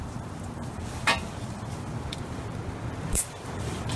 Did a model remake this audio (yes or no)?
yes